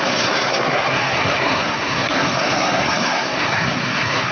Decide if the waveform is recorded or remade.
remade